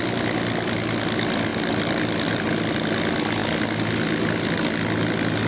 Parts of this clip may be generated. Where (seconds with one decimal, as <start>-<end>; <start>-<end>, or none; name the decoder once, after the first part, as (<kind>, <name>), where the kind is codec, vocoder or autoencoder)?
none